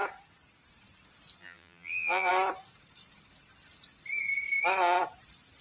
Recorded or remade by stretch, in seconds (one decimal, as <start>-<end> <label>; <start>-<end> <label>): 0.0-1.4 recorded; 1.4-2.3 remade; 2.3-5.6 recorded